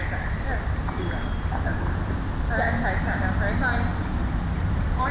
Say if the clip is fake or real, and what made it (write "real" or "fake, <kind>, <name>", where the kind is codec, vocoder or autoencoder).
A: real